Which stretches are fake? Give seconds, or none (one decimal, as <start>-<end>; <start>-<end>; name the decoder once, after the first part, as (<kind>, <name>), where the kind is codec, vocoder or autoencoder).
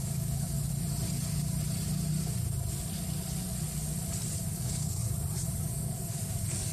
0.0-0.7 (codec, DAC); 4.5-5.0; 5.6-6.7